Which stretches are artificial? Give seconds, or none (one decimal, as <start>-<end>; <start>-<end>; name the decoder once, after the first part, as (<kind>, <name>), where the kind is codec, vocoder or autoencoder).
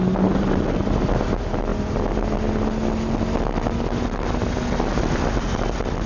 none